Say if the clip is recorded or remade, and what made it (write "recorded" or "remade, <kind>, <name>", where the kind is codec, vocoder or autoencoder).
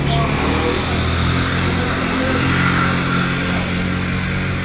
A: recorded